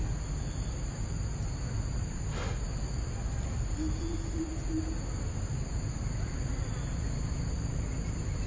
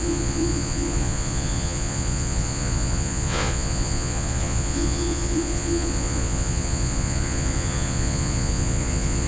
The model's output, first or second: second